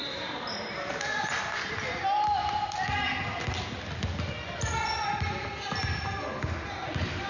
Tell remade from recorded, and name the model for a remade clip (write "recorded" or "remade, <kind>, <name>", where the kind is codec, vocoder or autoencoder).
recorded